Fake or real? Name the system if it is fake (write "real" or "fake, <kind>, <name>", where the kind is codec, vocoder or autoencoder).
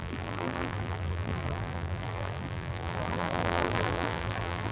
fake, vocoder, BigVGAN v2